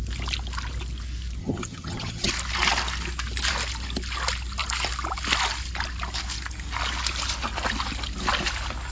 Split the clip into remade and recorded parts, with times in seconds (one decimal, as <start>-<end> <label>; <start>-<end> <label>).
0.0-1.4 recorded; 1.4-2.3 remade; 2.3-8.9 recorded